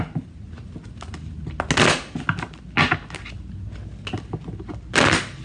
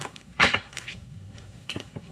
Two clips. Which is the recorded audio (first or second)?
first